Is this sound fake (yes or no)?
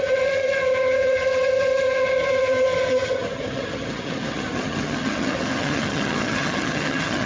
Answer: yes